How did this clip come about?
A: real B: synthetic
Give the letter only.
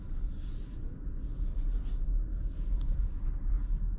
A